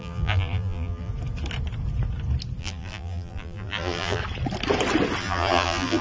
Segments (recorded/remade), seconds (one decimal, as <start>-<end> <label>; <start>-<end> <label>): 0.0-1.1 remade; 1.1-2.6 recorded; 2.6-4.2 remade; 4.2-5.2 recorded; 5.2-6.0 remade